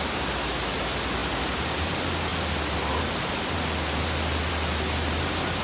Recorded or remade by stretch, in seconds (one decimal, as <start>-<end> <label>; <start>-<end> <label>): 0.0-5.6 recorded